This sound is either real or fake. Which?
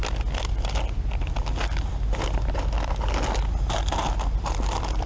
real